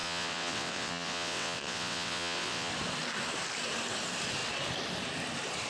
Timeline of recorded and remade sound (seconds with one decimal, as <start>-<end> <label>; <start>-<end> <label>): 0.0-2.7 remade; 2.7-5.7 recorded